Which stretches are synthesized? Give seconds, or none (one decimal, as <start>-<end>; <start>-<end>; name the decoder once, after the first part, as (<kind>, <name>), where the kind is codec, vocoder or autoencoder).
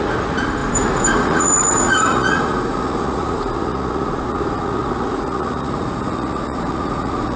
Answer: 0.0-7.4 (vocoder, Vocos)